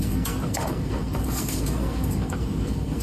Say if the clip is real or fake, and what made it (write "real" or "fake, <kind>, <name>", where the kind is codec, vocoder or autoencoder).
fake, codec, SNAC